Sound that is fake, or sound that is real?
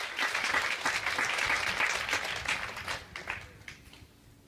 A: real